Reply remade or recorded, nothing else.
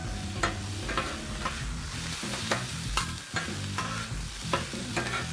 recorded